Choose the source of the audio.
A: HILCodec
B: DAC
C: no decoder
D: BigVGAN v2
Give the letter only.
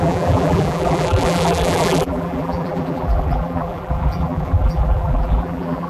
D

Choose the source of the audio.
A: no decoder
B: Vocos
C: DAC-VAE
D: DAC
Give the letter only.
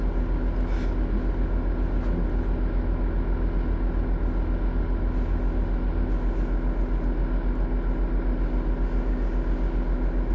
A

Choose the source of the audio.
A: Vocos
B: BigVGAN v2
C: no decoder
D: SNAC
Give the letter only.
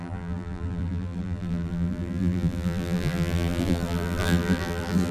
B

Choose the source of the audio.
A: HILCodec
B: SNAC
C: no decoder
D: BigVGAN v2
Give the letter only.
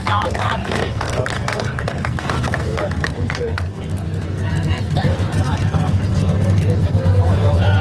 B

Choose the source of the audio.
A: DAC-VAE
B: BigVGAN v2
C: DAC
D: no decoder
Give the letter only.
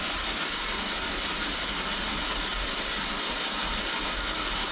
D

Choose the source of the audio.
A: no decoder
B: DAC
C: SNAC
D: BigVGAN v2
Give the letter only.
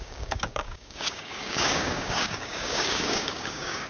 B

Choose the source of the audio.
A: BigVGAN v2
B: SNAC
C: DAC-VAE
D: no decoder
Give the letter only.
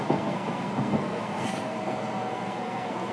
B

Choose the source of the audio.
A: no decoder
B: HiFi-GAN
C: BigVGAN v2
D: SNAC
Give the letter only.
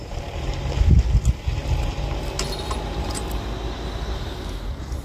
A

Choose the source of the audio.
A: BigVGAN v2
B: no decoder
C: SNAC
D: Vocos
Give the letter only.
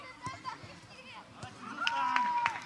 B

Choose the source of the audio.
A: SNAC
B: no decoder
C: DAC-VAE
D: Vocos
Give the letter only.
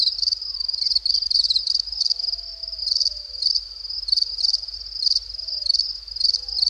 B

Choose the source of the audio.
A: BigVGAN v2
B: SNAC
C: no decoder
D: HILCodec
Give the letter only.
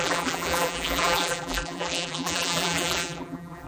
A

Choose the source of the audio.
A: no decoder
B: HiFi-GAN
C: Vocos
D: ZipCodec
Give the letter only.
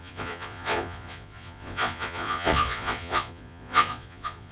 C